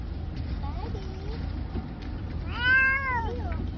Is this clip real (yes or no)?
yes